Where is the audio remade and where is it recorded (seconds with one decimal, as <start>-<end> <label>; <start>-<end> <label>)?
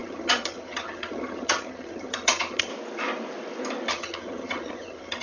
0.0-2.7 remade; 2.7-3.9 recorded; 3.9-5.2 remade